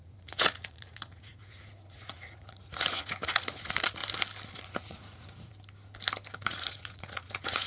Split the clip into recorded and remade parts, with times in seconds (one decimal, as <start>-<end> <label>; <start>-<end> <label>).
0.0-4.0 remade; 4.0-4.6 recorded; 4.6-5.5 remade; 5.5-6.4 recorded; 6.4-7.7 remade